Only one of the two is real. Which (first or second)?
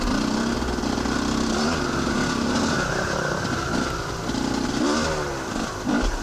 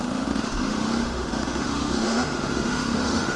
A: first